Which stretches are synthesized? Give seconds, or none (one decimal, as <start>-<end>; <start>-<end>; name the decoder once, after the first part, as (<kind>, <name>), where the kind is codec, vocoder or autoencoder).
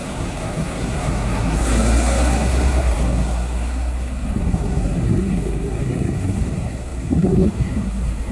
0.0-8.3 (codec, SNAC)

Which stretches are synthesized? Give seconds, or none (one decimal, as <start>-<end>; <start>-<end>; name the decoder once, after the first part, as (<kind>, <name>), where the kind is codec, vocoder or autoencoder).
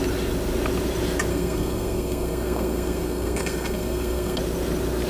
1.3-4.4 (codec, SNAC)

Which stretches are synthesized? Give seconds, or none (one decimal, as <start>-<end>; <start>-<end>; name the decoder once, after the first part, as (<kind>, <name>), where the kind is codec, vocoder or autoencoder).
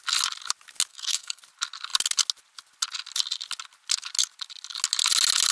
0.9-1.4 (codec, SNAC)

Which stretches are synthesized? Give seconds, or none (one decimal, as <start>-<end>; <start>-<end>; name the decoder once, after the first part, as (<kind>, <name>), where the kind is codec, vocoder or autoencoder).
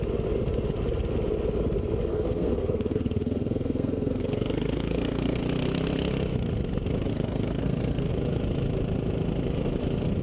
2.1-5.4 (codec, SNAC); 7.1-8.1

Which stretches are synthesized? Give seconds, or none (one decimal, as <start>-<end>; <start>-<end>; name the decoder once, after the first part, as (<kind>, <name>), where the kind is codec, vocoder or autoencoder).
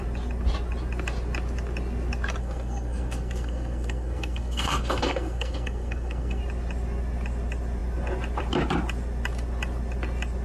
2.4-6.4 (codec, SNAC)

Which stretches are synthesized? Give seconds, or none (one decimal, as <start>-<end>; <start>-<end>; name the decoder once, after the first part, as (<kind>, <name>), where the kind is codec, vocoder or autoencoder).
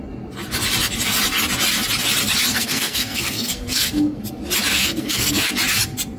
2.5-4.2 (codec, SNAC); 4.7-5.5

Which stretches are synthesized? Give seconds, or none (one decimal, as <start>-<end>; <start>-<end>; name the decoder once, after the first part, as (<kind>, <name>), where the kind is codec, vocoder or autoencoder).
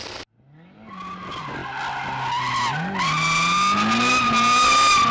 none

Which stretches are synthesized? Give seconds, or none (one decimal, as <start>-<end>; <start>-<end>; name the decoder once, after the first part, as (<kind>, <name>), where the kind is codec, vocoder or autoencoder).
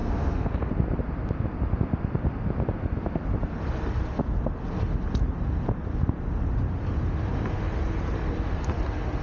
0.0-0.7 (codec, SNAC)